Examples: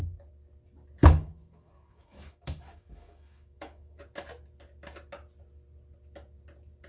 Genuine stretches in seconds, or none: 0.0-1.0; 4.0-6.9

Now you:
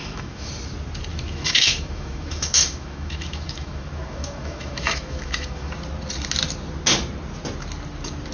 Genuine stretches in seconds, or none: 0.5-1.1; 5.7-8.3

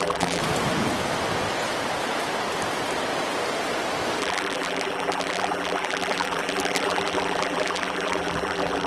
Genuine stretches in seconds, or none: 0.4-4.2

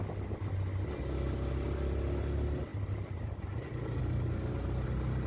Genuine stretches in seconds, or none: 0.0-5.3